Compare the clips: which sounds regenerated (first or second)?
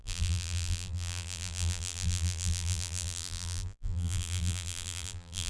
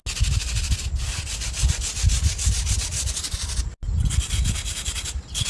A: first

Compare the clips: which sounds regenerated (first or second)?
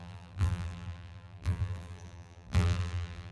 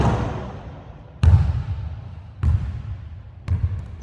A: first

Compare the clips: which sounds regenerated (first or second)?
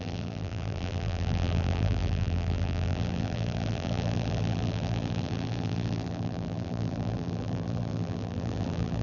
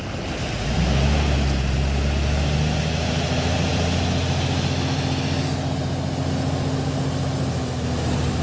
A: first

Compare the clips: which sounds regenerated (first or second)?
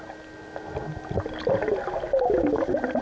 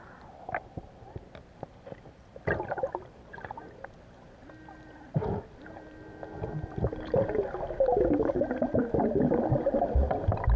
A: second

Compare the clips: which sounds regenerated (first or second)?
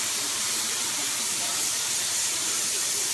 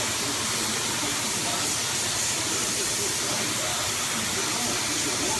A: first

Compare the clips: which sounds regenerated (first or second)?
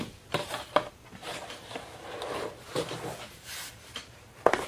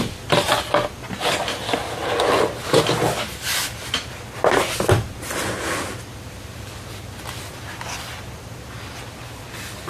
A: first